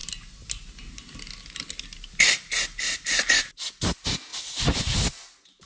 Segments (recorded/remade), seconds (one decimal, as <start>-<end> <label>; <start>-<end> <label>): 0.0-5.7 recorded

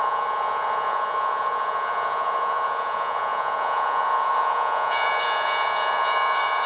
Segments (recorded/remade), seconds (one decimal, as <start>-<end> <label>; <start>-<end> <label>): 0.0-6.7 remade

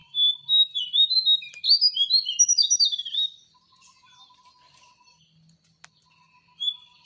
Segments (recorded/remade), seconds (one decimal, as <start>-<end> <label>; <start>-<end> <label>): 0.0-7.1 recorded